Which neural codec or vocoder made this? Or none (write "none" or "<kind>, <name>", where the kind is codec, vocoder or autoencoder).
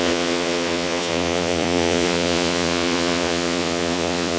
vocoder, Vocos